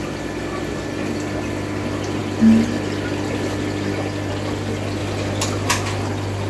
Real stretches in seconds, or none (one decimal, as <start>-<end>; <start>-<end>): 0.0-6.5